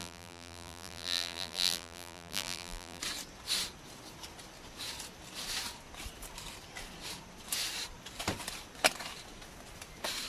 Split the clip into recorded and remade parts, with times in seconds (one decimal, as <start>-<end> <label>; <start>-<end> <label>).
0.0-3.0 remade; 3.0-10.3 recorded